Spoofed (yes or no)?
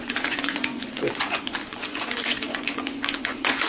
yes